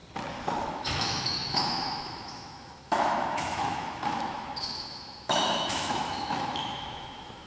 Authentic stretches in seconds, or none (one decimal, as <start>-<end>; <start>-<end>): 0.0-0.7